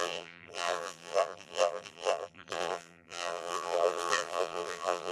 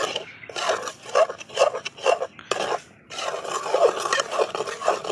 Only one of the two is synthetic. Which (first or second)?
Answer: first